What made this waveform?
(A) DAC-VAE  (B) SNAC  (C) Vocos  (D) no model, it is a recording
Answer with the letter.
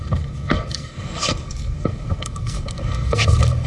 B